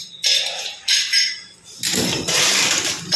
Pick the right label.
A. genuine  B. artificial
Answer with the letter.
B